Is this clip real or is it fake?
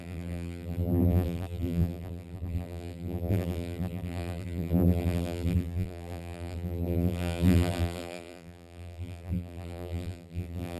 fake